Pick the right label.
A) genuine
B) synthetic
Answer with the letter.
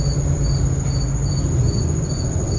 A